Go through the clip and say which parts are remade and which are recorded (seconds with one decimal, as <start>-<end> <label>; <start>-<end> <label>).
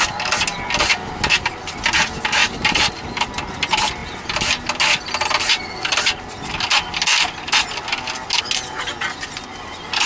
0.0-2.4 recorded; 2.4-3.3 remade; 3.3-10.1 recorded